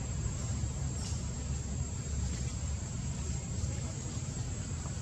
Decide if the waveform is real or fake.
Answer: fake